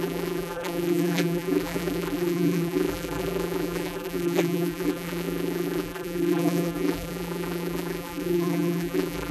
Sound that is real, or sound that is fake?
fake